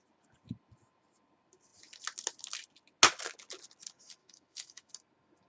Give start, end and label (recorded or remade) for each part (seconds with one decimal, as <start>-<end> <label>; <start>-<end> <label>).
0.0-4.2 recorded; 4.2-4.9 remade; 4.9-5.5 recorded